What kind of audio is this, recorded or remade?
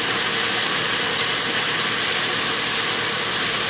recorded